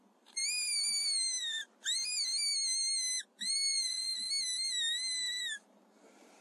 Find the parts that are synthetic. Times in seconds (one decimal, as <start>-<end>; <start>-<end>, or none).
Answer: 0.0-0.4; 3.2-4.1; 5.4-6.4